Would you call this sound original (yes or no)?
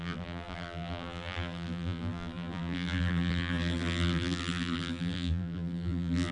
no